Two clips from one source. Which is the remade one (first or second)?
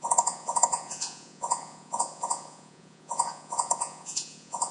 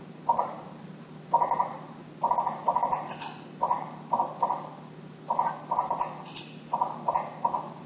first